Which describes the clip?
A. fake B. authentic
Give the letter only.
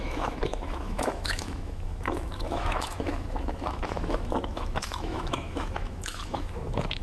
A